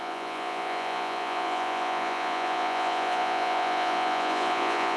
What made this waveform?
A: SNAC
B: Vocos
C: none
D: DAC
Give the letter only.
B